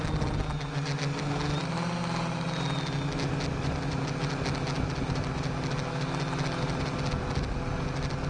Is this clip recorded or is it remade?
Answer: recorded